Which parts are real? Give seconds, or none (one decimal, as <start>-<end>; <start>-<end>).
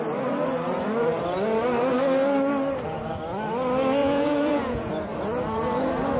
0.0-4.0; 4.9-6.2